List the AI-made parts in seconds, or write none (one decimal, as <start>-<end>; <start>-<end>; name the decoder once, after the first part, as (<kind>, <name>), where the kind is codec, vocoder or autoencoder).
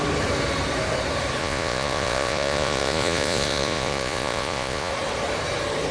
1.4-4.9 (vocoder, Vocos)